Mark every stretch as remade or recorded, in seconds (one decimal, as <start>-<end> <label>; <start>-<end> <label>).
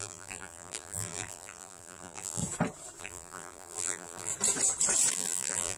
0.0-2.4 remade; 2.4-3.0 recorded; 3.0-4.3 remade; 4.3-5.1 recorded; 5.1-5.8 remade